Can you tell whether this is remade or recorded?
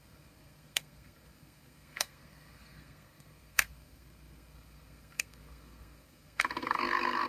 remade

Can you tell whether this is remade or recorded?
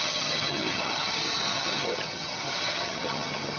remade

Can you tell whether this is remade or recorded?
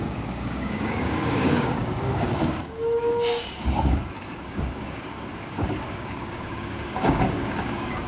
remade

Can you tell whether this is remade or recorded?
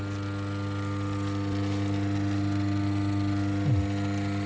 recorded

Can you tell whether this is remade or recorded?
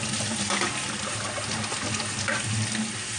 recorded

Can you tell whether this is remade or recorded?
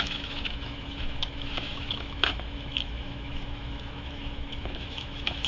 remade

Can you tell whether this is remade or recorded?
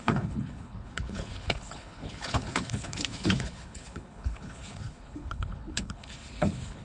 remade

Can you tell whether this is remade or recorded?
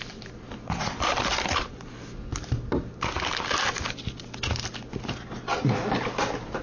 recorded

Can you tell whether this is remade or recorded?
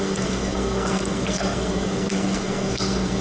remade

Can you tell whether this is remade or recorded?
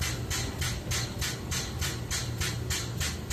recorded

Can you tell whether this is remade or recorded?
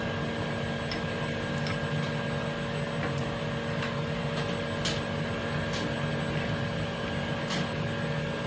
recorded